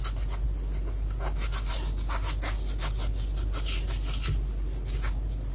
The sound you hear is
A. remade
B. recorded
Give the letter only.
B